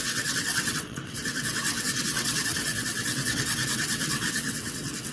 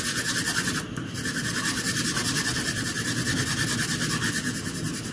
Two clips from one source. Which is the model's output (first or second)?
first